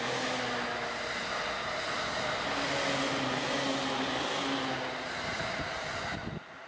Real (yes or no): yes